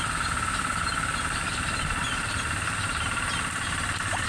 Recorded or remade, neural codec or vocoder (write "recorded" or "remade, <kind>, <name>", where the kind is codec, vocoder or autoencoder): remade, vocoder, BigVGAN v2